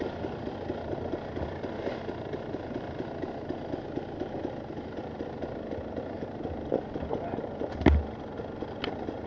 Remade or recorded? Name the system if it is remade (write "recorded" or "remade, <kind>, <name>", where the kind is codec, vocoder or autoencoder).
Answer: recorded